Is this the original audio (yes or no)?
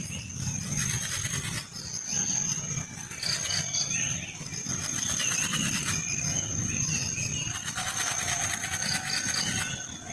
yes